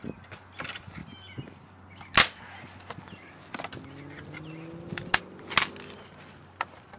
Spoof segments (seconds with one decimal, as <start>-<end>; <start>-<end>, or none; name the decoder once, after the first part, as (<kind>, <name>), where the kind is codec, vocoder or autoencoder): none

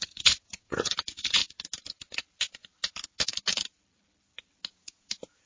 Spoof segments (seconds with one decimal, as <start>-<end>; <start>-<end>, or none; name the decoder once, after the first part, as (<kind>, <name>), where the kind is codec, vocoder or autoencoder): 0.0-1.4 (vocoder, Vocos); 4.7-5.5

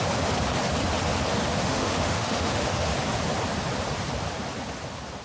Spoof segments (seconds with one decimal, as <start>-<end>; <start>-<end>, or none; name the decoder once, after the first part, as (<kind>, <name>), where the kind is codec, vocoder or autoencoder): 1.6-2.9 (autoencoder, DAC-VAE)

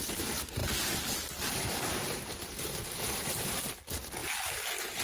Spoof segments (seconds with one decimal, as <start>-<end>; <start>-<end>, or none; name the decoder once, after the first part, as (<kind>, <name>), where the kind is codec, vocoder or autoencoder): 0.6-3.6 (vocoder, BigVGAN v2)